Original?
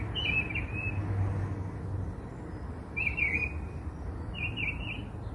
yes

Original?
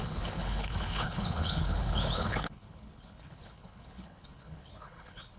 no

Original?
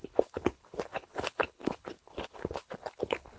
no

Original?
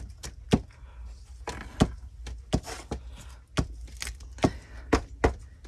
yes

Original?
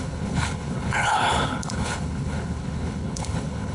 no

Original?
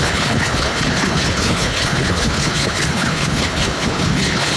no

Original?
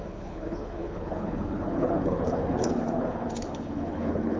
no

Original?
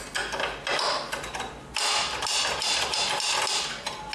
yes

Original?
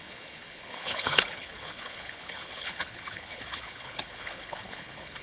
no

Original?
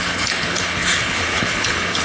no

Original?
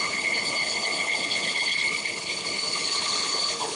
no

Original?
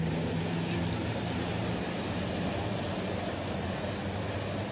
yes